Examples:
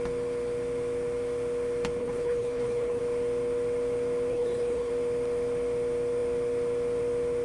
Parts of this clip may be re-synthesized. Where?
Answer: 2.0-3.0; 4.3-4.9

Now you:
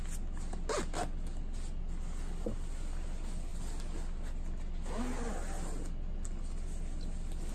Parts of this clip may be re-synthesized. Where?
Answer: none

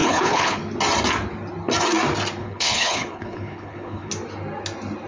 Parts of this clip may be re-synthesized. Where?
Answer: 0.0-0.6; 2.4-4.1

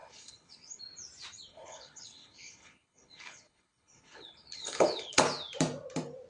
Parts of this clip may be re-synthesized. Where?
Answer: 0.0-0.8; 1.5-5.2

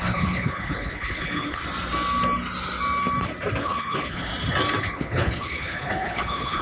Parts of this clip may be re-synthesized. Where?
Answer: 0.0-1.6; 3.6-4.3; 4.8-6.6

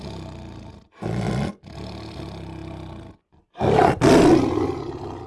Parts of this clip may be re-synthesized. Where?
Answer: none

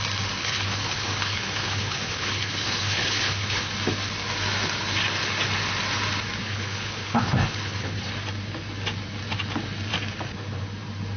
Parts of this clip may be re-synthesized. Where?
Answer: 0.4-3.7; 6.4-8.1